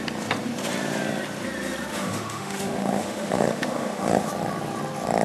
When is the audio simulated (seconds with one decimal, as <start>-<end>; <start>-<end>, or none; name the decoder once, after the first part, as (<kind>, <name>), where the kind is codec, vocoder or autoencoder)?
1.9-4.3 (autoencoder, DAC-VAE)